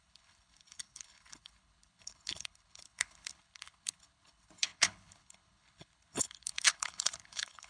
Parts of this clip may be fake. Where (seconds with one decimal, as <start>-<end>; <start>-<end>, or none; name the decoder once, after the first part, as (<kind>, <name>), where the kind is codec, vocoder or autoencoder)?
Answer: 0.0-7.7 (codec, HILCodec)